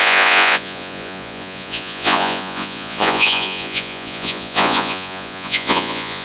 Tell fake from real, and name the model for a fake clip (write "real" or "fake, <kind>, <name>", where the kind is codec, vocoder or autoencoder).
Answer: fake, vocoder, Vocos